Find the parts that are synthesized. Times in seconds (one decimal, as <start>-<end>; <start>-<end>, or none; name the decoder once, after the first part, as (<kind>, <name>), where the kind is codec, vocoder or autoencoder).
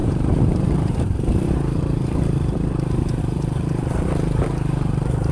0.0-5.3 (vocoder, BigVGAN v2)